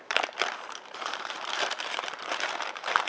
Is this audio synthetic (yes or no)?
yes